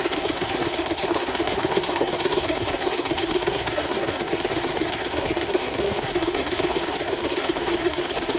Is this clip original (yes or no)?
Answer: no